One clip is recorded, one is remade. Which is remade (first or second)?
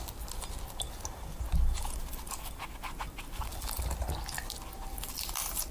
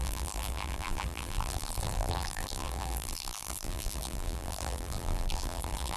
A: second